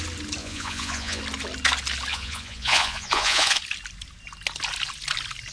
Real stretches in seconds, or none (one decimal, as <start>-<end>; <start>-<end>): 0.0-0.4; 1.2-2.1; 3.6-5.5